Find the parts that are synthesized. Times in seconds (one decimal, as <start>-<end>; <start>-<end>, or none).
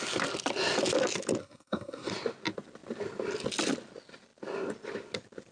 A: 1.4-2.1